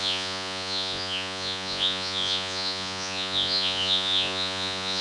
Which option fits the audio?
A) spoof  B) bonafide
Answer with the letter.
A